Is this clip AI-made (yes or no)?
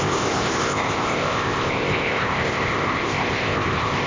yes